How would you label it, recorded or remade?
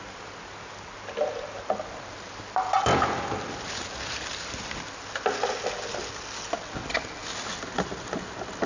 recorded